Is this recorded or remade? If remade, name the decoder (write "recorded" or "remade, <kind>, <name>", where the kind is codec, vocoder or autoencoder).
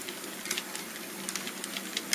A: recorded